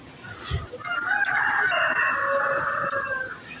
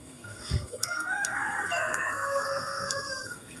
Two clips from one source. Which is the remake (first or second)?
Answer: second